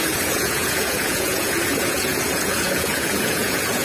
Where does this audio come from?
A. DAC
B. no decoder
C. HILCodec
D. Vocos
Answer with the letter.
D